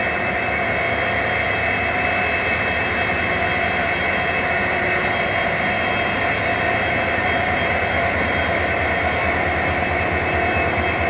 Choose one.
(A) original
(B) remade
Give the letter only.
A